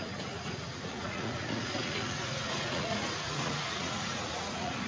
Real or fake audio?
fake